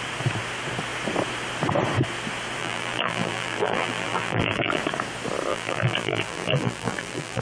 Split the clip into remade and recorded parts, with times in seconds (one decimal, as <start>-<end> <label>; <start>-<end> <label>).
0.0-2.6 recorded; 2.6-4.8 remade; 4.8-5.5 recorded; 5.5-7.4 remade